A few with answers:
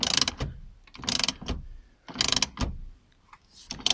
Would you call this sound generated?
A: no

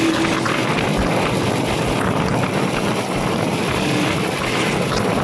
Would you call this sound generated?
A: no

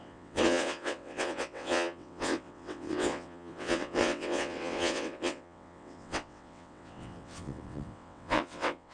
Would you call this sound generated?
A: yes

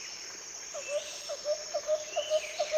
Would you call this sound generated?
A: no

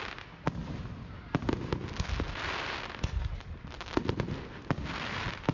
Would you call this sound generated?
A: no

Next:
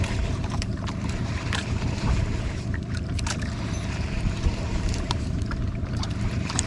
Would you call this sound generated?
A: yes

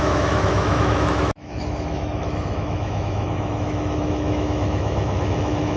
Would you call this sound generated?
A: yes